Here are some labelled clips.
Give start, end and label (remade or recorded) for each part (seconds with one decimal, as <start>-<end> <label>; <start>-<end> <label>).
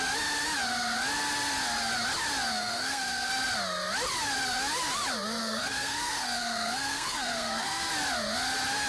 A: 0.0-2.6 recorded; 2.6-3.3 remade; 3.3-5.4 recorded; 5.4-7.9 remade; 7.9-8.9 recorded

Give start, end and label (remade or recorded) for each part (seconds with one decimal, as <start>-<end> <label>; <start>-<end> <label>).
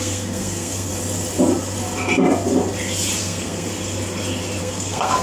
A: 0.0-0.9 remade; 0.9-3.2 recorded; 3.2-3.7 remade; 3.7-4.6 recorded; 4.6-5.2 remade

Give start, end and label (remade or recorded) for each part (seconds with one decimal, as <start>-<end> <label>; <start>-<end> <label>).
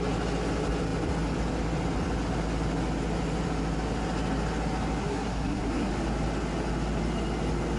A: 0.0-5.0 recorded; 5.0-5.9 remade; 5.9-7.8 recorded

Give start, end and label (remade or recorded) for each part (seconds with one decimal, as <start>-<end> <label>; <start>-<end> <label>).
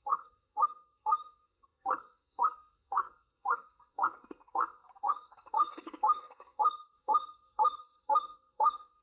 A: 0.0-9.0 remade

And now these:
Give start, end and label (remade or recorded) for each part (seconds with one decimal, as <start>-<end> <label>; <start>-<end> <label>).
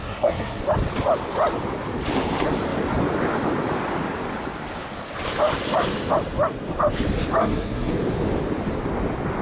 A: 0.0-0.6 remade; 0.6-7.4 recorded; 7.4-7.9 remade; 7.9-9.4 recorded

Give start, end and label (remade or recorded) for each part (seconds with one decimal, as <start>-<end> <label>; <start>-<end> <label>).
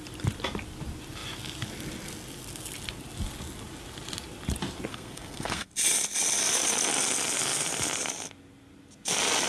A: 0.0-4.9 recorded; 4.9-5.7 remade; 5.7-9.5 recorded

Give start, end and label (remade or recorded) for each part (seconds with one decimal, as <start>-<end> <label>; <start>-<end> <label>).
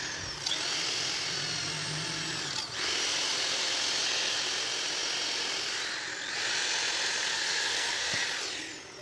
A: 0.0-7.3 recorded; 7.3-8.2 remade; 8.2-9.0 recorded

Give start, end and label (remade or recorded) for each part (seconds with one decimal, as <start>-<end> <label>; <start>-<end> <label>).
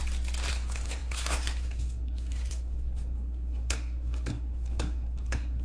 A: 0.0-0.5 recorded; 0.5-5.6 remade